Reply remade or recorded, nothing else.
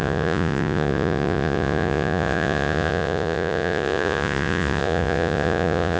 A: remade